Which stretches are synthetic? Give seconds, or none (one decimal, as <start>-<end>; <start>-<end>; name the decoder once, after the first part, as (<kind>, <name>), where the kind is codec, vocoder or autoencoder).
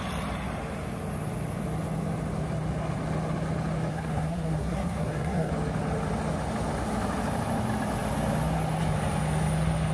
3.9-5.5 (codec, SNAC)